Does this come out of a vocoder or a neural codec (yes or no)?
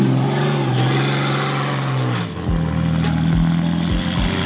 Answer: no